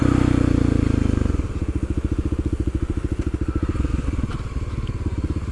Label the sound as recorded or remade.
recorded